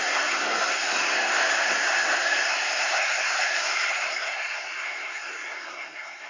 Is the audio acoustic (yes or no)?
no